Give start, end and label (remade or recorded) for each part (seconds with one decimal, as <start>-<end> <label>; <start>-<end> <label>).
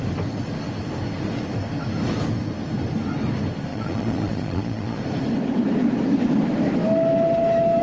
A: 0.0-3.7 recorded; 3.7-5.0 remade; 5.0-7.8 recorded